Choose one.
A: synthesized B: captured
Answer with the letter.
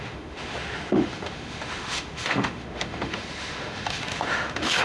A